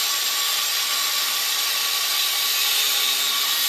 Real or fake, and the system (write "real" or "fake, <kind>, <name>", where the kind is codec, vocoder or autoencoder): real